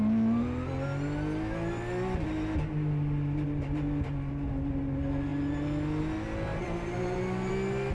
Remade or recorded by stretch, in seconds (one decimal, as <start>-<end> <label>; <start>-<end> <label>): 0.0-6.5 recorded; 6.5-7.5 remade; 7.5-7.9 recorded